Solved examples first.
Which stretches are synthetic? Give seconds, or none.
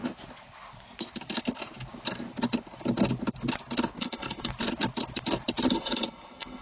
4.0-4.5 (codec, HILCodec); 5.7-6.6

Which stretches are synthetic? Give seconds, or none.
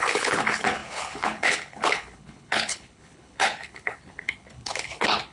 0.0-5.3 (codec, HILCodec)